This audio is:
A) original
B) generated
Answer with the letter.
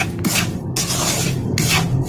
A